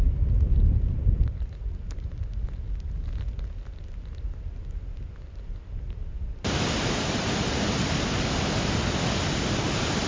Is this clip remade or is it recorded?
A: recorded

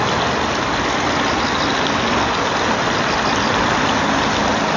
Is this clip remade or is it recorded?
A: recorded